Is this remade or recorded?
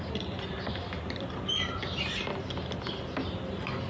recorded